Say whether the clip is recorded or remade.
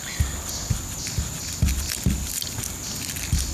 recorded